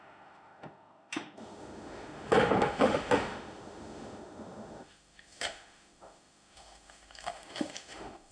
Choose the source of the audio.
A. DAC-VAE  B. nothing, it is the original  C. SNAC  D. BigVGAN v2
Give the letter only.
A